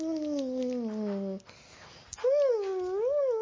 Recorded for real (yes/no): yes